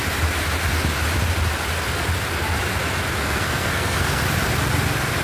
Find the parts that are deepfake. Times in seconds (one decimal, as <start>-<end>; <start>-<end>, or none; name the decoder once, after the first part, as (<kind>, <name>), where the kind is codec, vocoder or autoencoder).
3.2-4.2 (codec, SNAC)